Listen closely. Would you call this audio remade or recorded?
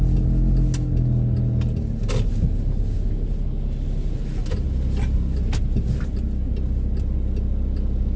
recorded